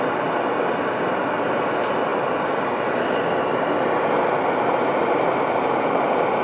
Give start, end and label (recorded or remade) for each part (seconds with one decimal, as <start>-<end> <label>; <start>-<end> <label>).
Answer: 0.0-6.4 recorded